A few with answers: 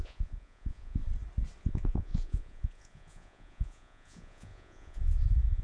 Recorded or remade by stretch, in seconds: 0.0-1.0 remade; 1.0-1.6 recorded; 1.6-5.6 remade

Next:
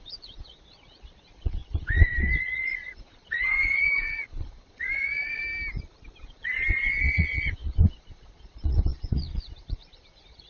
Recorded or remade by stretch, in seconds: 0.0-5.4 remade; 5.4-6.2 recorded; 6.2-10.5 remade

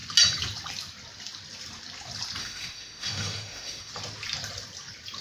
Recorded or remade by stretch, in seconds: 0.0-2.4 recorded; 2.4-3.9 remade; 3.9-5.2 recorded

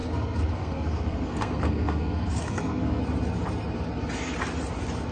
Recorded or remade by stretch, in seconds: 0.0-3.0 remade; 3.0-5.1 recorded

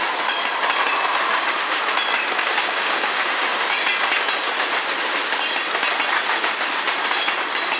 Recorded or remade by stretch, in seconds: 0.0-2.4 recorded; 2.4-3.2 remade; 3.2-7.8 recorded